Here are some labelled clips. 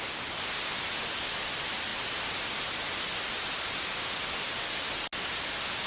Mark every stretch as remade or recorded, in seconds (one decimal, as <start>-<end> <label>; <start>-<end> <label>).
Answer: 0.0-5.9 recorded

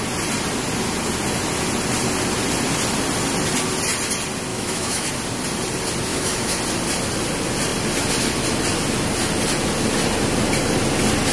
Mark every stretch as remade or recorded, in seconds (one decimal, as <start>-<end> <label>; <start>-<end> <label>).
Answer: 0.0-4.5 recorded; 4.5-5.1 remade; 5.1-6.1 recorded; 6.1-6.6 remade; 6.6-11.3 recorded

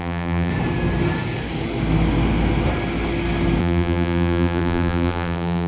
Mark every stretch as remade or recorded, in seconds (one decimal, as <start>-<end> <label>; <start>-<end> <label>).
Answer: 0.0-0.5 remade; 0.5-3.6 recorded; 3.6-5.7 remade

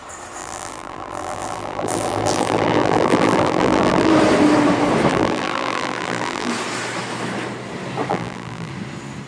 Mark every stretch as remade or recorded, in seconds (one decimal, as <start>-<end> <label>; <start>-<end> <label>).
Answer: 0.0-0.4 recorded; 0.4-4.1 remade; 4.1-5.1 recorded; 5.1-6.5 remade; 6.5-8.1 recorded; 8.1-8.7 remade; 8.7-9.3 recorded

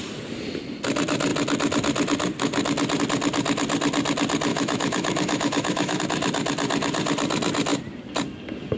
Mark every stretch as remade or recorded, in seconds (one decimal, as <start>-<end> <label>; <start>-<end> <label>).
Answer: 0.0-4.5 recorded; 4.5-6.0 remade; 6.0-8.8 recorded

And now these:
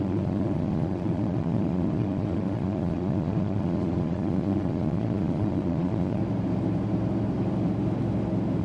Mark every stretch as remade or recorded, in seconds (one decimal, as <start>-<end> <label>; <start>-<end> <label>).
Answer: 0.0-6.2 remade; 6.2-8.6 recorded